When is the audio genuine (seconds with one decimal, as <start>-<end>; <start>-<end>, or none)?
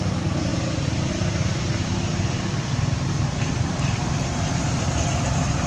0.0-2.1; 4.3-5.7